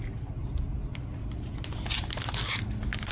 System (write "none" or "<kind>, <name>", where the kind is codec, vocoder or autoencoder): none